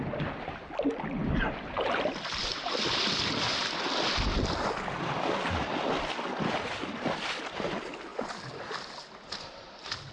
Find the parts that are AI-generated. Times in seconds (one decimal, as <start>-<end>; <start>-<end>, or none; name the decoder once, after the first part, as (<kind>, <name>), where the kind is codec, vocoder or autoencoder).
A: none